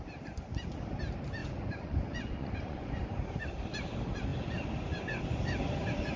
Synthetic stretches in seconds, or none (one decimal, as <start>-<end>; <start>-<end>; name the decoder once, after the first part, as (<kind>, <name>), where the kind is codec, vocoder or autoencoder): 1.4-3.0 (vocoder, Vocos)